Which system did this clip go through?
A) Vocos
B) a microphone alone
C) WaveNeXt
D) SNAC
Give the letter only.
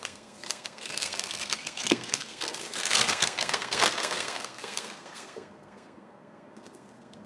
D